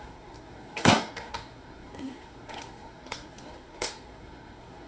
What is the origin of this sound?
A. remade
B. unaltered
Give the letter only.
A